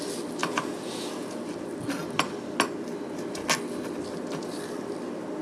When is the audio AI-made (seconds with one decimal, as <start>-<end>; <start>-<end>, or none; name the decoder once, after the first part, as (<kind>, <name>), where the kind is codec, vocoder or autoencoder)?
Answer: 0.4-1.4 (vocoder, Vocos)